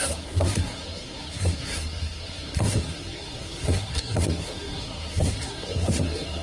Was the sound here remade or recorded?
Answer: remade